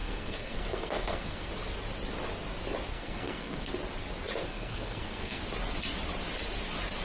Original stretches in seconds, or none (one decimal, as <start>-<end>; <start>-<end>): 1.5-2.9; 3.7-4.4; 5.4-7.0